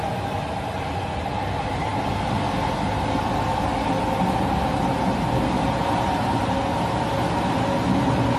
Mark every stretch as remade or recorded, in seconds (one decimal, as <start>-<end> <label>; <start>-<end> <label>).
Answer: 0.0-8.4 recorded

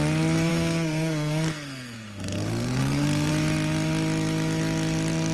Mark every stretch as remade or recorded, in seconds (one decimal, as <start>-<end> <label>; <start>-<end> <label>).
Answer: 0.0-0.5 recorded; 0.5-3.3 remade; 3.3-5.3 recorded

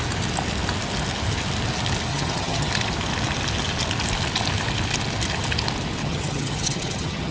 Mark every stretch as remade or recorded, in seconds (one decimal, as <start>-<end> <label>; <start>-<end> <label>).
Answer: 0.0-2.1 recorded; 2.1-2.7 remade; 2.7-6.0 recorded; 6.0-7.3 remade

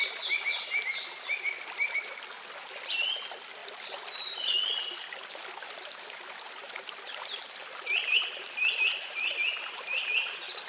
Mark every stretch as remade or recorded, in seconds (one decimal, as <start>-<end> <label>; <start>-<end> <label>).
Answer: 0.0-4.6 recorded; 4.6-9.0 remade; 9.0-10.7 recorded

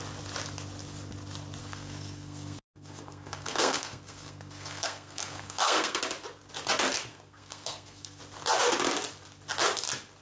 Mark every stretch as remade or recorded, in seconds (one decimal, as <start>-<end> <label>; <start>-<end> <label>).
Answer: 0.0-1.6 recorded; 1.6-6.0 remade; 6.0-7.1 recorded; 7.1-8.2 remade; 8.2-10.2 recorded

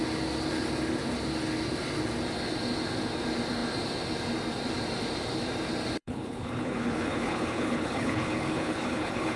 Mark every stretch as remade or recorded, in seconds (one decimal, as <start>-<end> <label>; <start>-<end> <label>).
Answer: 0.0-6.0 recorded; 6.0-9.4 remade